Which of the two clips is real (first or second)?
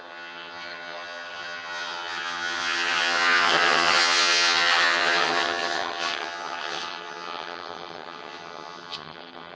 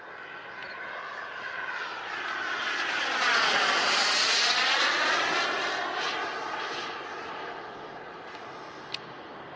second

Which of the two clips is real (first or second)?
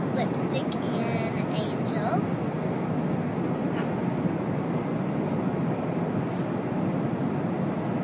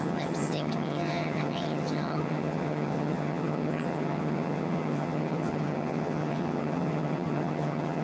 first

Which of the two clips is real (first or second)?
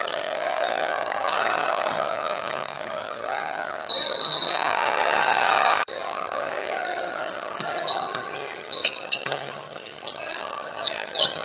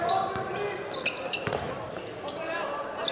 second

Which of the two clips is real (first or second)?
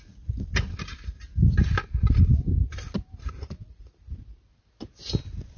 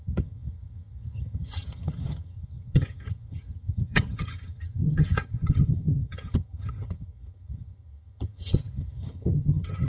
first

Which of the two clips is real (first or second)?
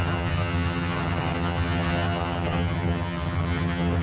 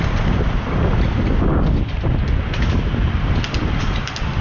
second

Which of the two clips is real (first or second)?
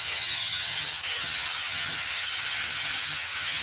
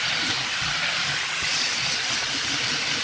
second